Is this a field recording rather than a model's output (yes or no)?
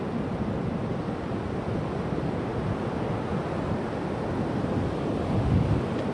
yes